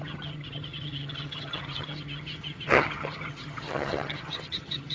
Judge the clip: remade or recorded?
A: remade